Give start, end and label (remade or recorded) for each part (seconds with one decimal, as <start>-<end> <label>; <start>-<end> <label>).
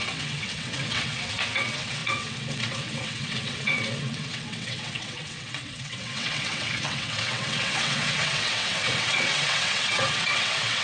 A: 0.0-10.8 remade